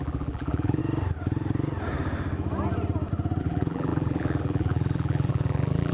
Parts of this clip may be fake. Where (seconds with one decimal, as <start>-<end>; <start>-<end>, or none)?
0.0-0.8; 3.4-5.9